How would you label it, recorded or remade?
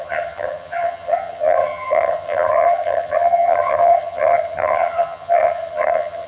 remade